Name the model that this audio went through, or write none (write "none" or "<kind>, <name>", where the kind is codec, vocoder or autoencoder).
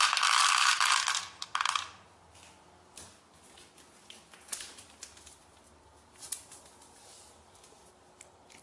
none